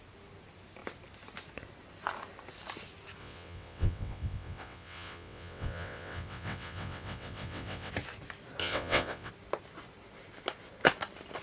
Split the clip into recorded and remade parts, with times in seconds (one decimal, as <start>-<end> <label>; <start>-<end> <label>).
0.0-3.2 recorded; 3.2-7.9 remade; 7.9-8.6 recorded; 8.6-9.3 remade; 9.3-11.4 recorded